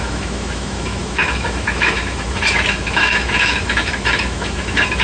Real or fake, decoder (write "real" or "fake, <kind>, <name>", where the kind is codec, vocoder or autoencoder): fake, autoencoder, DAC-VAE